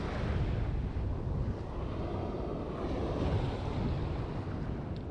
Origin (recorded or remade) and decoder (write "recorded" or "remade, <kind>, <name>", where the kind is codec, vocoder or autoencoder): recorded